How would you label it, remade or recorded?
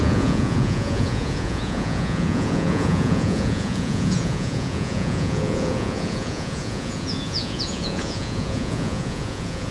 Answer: remade